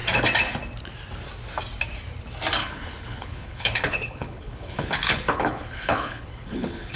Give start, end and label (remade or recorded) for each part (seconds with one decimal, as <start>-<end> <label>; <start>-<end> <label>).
0.0-2.6 recorded; 2.6-7.0 remade